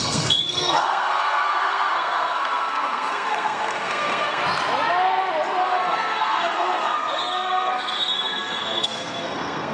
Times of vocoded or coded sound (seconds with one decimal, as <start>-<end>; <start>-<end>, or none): 0.0-4.4; 5.6-9.7